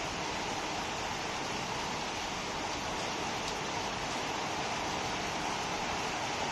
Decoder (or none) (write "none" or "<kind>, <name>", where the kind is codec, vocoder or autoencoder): none